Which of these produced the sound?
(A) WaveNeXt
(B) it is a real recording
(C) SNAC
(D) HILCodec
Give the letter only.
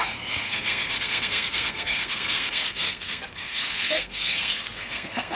C